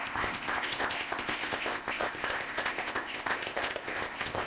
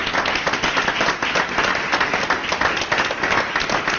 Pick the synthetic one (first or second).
first